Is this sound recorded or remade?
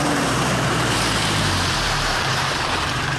remade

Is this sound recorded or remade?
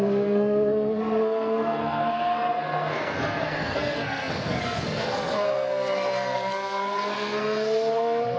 remade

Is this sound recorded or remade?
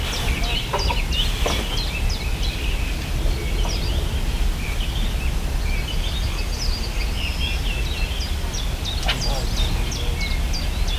recorded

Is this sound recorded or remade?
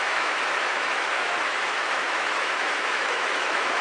remade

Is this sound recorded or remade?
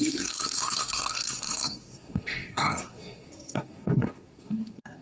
remade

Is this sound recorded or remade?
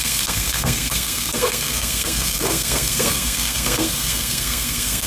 remade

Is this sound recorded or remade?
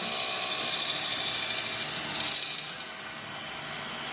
recorded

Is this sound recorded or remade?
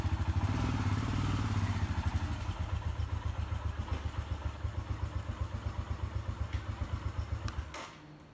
recorded